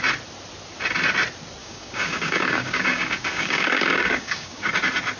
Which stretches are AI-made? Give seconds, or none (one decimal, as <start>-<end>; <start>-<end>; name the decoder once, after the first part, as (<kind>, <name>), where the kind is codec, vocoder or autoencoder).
1.6-4.7 (codec, DAC)